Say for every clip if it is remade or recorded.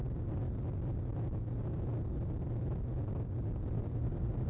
recorded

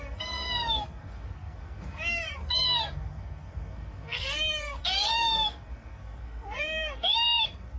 remade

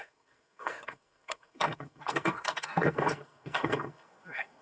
remade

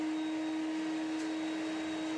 recorded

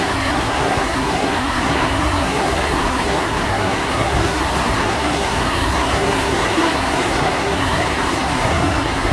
remade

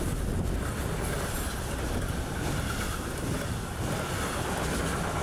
recorded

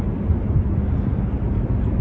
recorded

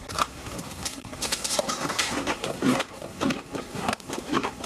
remade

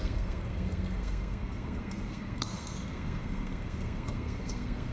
remade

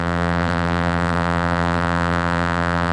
remade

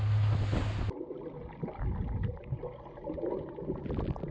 recorded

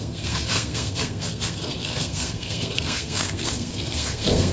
remade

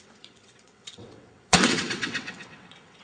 remade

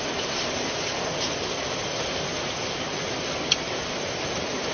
recorded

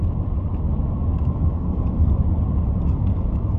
recorded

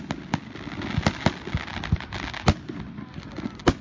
recorded